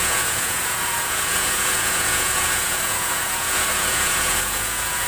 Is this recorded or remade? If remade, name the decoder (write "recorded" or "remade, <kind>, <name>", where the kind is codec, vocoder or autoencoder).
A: remade, vocoder, Vocos